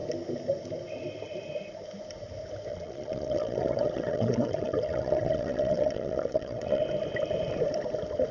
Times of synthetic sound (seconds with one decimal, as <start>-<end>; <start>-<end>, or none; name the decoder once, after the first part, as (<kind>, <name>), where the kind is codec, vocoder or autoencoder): 2.7-6.8 (vocoder, Vocos)